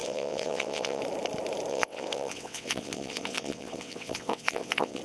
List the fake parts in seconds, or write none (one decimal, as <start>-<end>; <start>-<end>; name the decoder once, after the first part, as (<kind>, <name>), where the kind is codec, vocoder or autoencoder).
0.0-1.0 (vocoder, WaveNeXt); 1.7-5.0